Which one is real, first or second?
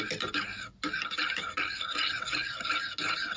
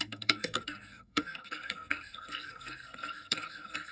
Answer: first